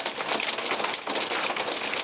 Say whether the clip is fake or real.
real